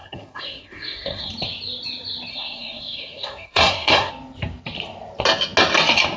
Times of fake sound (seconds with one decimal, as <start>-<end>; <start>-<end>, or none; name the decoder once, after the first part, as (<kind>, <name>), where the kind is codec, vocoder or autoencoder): 0.0-1.3 (codec, SNAC); 2.3-4.1